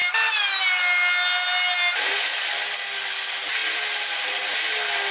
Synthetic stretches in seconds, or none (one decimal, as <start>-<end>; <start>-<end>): none